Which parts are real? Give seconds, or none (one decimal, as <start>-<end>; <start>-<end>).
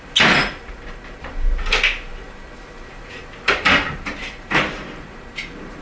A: 0.0-0.4; 1.3-2.1